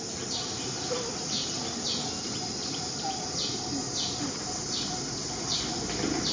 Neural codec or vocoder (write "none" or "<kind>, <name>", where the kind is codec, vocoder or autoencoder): none